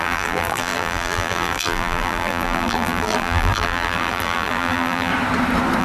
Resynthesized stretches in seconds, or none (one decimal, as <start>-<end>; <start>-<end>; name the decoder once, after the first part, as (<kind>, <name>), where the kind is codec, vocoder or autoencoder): 0.0-5.1 (vocoder, BigVGAN v2)